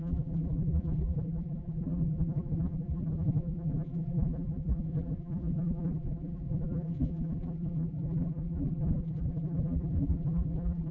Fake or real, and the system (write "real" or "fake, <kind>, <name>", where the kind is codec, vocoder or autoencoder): fake, vocoder, BigVGAN v2